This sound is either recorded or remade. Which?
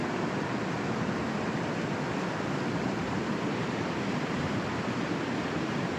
recorded